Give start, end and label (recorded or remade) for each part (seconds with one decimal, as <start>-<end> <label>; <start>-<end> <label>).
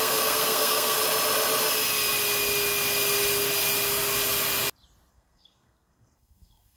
0.0-1.0 remade; 1.0-5.1 recorded; 5.1-6.8 remade